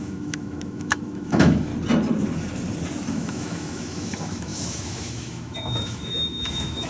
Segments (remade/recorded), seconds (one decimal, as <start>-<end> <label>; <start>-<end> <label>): 0.0-1.7 remade; 1.7-3.1 recorded; 3.1-6.9 remade